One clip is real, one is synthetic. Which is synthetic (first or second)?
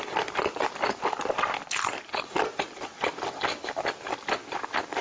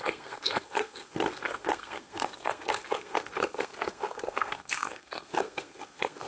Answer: second